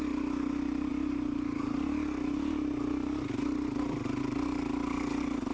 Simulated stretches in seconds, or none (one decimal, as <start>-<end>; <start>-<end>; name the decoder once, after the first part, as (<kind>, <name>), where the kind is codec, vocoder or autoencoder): none